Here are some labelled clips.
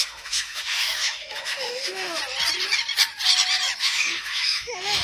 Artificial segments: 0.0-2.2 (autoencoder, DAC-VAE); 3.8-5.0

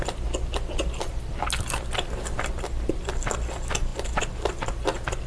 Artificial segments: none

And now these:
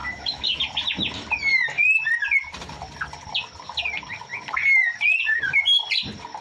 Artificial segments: 0.0-0.6 (autoencoder, DAC-VAE)

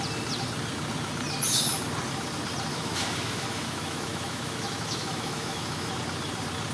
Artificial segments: 2.7-5.9 (autoencoder, DAC-VAE)